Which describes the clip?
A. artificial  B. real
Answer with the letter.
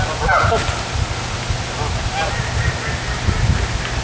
B